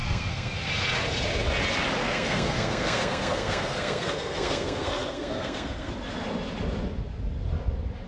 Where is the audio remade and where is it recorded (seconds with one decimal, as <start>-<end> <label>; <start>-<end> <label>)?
0.0-0.7 remade; 0.7-2.0 recorded; 2.0-5.9 remade; 5.9-8.1 recorded